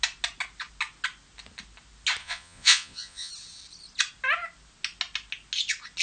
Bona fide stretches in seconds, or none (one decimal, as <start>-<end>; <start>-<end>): 0.0-2.2; 3.3-6.0